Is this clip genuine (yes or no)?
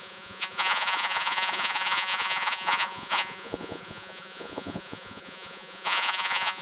no